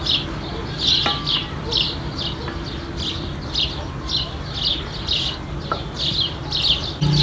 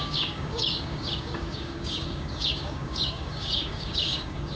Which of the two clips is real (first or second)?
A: first